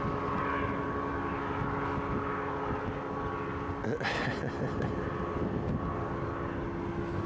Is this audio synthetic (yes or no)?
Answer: no